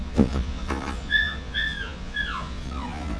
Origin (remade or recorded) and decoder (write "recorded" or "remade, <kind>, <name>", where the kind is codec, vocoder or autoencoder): remade, vocoder, Vocos